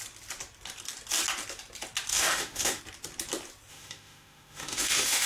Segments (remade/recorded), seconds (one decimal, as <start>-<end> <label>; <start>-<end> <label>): 0.0-2.1 recorded; 2.1-2.8 remade; 2.8-3.7 recorded; 3.7-5.3 remade